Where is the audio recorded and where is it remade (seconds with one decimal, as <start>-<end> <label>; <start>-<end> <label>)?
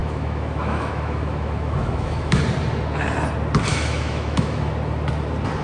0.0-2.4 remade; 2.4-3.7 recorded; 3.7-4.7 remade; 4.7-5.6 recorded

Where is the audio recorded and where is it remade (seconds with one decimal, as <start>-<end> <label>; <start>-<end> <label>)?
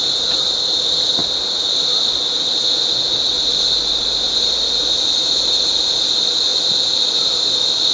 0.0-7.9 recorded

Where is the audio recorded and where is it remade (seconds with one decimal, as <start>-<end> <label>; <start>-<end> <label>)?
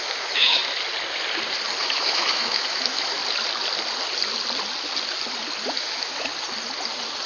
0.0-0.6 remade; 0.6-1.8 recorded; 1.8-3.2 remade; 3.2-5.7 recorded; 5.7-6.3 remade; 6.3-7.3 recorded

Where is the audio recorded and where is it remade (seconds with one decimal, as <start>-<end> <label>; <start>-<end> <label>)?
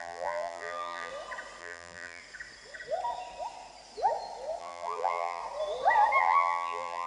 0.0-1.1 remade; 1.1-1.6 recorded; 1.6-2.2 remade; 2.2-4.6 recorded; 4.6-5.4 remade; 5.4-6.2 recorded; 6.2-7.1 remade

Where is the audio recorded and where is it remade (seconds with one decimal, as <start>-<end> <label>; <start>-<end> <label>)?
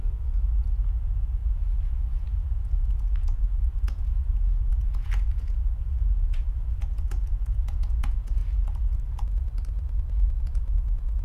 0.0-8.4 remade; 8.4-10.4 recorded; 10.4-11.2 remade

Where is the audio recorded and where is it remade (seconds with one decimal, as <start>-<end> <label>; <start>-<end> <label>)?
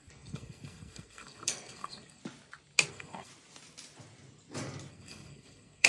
0.0-2.2 remade; 2.2-2.9 recorded; 2.9-3.3 remade; 3.3-4.9 recorded; 4.9-5.9 remade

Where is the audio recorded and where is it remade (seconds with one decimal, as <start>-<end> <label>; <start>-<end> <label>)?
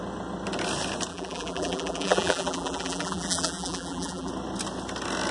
0.0-1.1 recorded; 1.1-4.3 remade; 4.3-5.3 recorded